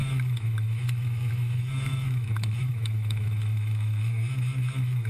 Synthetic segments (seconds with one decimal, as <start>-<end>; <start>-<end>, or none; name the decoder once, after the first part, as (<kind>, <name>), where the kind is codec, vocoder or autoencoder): 0.0-5.1 (autoencoder, DAC-VAE)